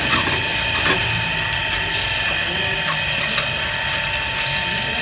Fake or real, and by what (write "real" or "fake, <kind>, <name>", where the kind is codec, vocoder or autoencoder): real